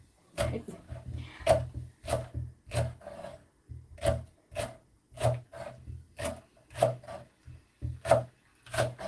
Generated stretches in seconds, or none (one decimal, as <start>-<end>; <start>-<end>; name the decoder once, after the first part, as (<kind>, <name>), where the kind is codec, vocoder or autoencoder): none